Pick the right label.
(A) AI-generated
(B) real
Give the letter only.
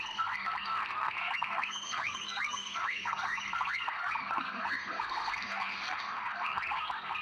A